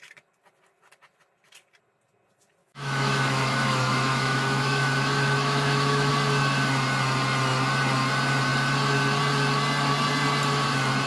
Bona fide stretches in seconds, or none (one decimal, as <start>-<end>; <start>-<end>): 0.0-2.6; 6.1-11.1